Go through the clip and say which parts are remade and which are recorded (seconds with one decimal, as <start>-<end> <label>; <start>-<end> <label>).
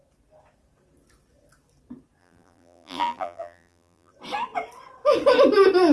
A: 0.0-2.2 recorded; 2.2-4.1 remade; 4.1-5.9 recorded